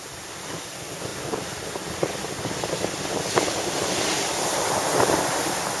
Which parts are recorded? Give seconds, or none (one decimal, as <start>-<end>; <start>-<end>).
1.1-4.6

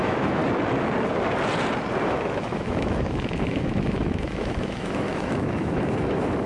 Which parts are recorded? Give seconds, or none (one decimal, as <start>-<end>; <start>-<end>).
0.4-2.0